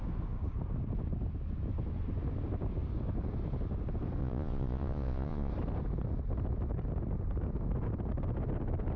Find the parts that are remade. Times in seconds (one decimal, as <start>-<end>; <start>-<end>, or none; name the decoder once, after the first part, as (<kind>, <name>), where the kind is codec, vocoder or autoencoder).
4.2-5.5 (vocoder, Vocos)